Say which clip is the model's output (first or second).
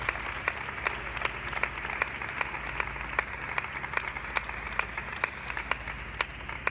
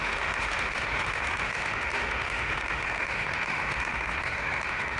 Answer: second